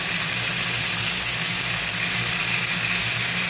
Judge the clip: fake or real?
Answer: real